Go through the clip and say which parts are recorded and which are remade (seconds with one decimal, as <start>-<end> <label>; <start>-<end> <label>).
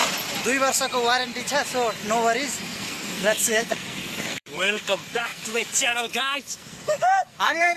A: 0.0-2.5 recorded; 2.5-7.8 remade